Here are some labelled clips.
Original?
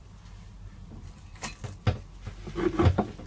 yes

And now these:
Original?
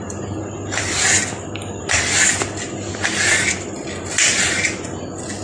yes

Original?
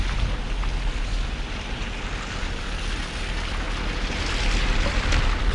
yes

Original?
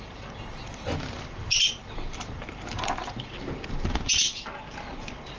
yes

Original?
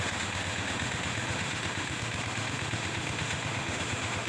no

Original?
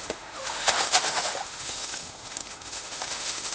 no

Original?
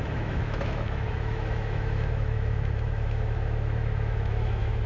no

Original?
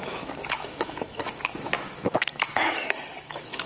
no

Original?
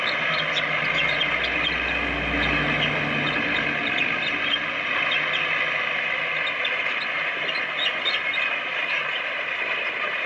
yes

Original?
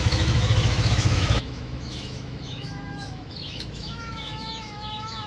no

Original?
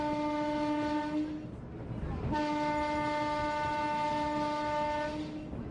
yes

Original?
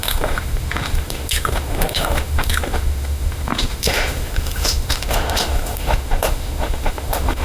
no